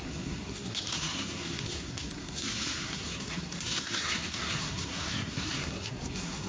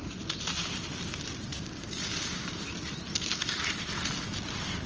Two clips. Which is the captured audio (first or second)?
second